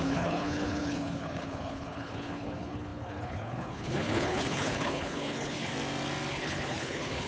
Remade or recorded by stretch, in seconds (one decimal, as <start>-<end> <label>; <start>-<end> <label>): 0.0-5.7 remade; 5.7-6.3 recorded; 6.3-7.3 remade

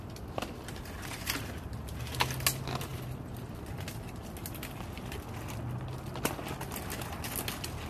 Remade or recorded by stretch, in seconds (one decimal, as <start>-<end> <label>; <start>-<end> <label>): 0.0-7.9 recorded